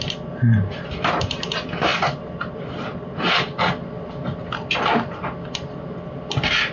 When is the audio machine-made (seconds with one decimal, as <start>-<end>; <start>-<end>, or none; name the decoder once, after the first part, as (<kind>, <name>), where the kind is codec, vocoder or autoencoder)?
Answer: none

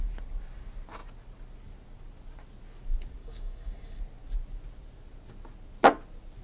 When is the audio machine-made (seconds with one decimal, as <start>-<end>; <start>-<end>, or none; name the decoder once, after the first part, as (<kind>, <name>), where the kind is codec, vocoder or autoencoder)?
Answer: 3.2-4.0 (codec, DAC)

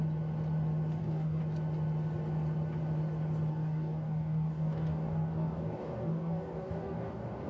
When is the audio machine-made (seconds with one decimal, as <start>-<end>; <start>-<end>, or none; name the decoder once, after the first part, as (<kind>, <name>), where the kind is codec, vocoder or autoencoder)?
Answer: 1.0-1.4 (codec, DAC); 3.5-7.5

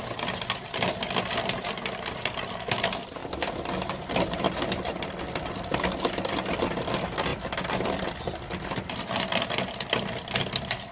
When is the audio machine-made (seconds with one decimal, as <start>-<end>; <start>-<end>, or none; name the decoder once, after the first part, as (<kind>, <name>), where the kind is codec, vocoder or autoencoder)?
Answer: none

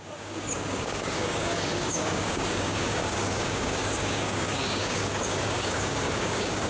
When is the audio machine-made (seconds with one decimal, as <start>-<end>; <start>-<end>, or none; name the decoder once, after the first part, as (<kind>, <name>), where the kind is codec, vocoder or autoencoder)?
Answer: 0.0-6.7 (codec, DAC)